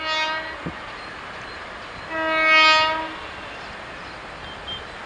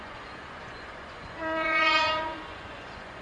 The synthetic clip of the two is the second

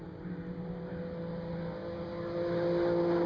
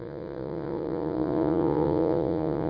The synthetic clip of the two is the second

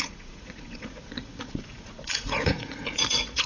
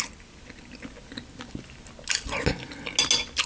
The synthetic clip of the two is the first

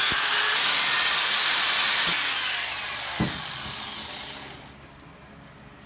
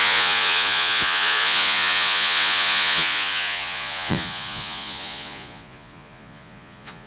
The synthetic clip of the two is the second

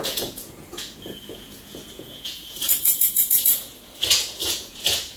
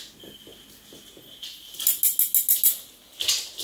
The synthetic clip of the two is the first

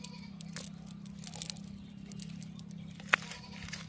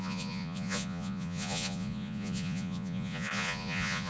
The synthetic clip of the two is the second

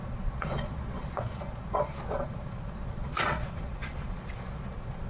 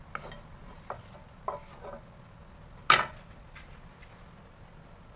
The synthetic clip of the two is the first